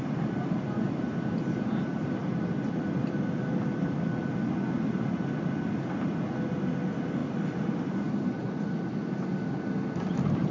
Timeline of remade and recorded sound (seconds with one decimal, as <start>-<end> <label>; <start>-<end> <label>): 0.0-2.2 recorded; 2.2-4.3 remade; 4.3-7.2 recorded; 7.2-8.8 remade; 8.8-10.5 recorded